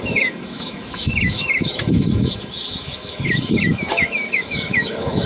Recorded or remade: remade